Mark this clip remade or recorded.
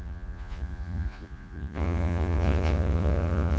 remade